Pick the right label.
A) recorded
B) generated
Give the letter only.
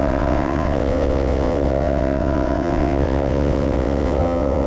B